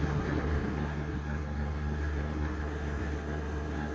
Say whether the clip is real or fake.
fake